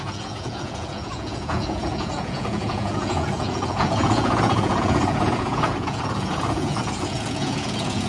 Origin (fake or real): fake